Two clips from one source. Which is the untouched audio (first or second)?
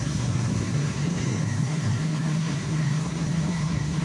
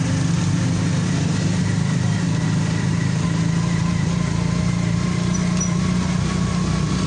second